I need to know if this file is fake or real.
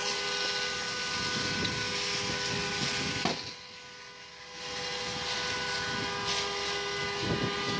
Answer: real